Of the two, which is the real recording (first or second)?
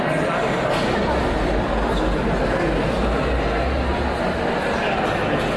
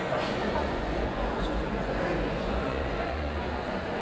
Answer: first